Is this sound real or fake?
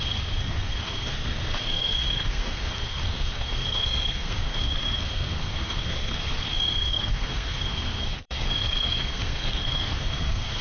fake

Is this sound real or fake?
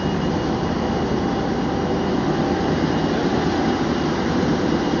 real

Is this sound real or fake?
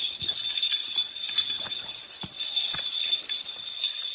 real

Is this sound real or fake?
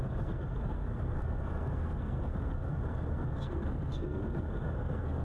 fake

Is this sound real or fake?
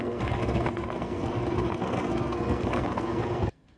fake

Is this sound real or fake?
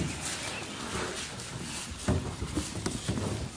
real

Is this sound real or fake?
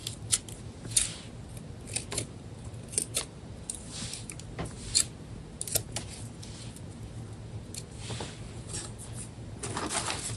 real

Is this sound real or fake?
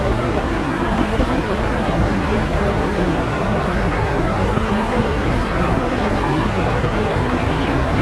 fake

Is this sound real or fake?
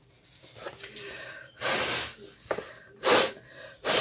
real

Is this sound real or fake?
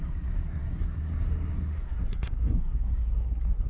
fake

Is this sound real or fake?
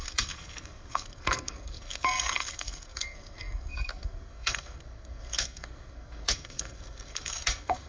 fake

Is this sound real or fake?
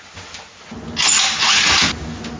real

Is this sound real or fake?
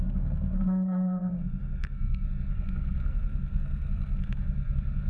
fake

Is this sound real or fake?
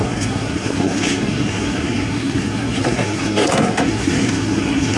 fake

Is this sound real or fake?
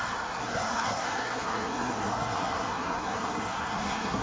fake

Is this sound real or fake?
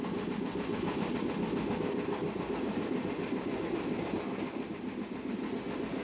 real